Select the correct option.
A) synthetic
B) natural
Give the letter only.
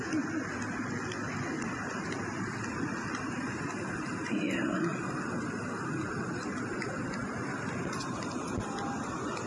B